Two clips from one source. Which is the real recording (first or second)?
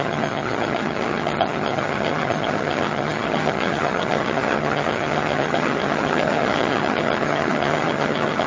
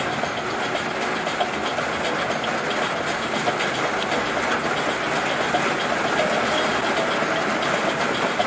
second